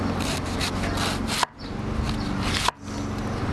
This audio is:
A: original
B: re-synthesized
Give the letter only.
A